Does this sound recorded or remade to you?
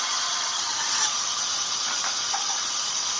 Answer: recorded